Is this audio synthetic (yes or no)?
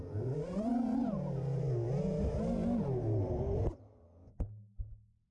no